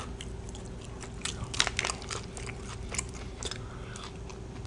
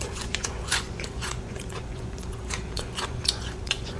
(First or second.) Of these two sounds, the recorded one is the first